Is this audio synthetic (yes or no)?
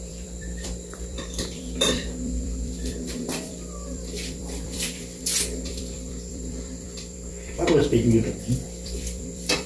yes